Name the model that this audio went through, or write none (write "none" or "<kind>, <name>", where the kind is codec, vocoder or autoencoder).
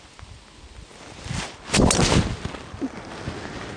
none